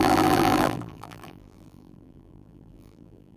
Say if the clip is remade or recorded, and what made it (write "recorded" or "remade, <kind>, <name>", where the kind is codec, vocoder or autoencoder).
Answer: remade, vocoder, BigVGAN v2